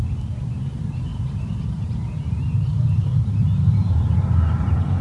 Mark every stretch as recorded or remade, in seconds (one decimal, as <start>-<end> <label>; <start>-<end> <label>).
0.0-1.1 recorded; 1.1-4.1 remade; 4.1-5.0 recorded